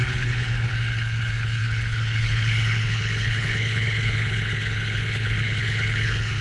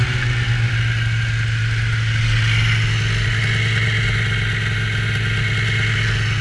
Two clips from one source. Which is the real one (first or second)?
second